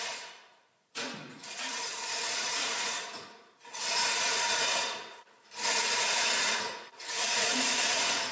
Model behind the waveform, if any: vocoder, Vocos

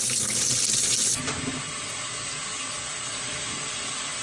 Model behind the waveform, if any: none